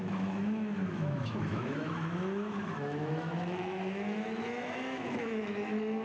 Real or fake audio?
fake